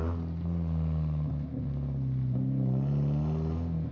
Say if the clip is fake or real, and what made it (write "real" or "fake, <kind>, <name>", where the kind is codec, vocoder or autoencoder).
real